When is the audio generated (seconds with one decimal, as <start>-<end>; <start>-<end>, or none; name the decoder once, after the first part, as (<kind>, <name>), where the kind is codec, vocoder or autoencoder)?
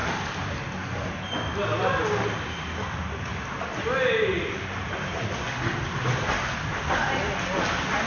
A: none